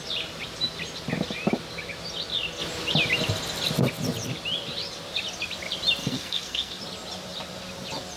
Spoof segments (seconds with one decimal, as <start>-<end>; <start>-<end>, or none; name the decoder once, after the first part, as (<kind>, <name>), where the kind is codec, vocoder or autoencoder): 6.0-6.8 (codec, SNAC)